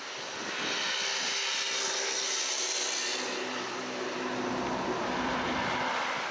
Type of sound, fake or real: real